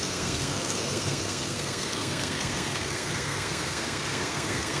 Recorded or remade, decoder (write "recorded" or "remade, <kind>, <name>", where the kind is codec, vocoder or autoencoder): remade, codec, SNAC